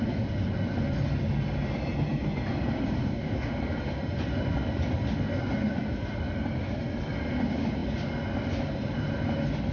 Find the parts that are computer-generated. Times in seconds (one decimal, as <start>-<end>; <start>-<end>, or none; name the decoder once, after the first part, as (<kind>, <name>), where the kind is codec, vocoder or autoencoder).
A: 3.0-3.5 (codec, DAC)